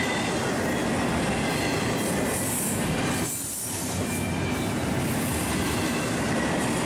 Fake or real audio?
real